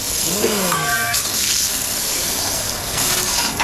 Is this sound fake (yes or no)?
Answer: yes